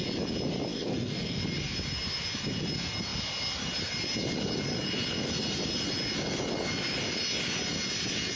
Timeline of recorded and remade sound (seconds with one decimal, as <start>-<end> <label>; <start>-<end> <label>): 0.0-0.7 recorded; 0.7-1.4 remade; 1.4-8.4 recorded